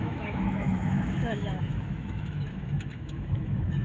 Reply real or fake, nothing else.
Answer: fake